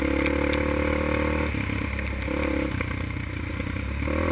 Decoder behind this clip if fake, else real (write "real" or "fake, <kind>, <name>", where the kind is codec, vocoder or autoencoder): real